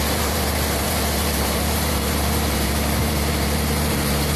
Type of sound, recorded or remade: remade